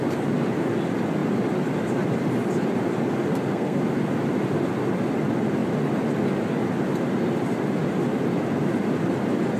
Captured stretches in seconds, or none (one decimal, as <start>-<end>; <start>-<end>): 0.0-3.3; 3.8-9.6